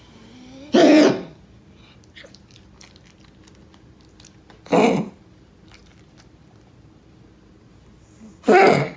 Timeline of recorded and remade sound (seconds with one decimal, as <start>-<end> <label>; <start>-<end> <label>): 0.0-9.0 recorded